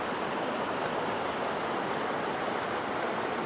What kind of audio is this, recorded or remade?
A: recorded